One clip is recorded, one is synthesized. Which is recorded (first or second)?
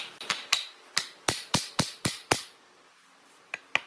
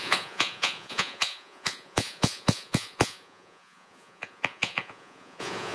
first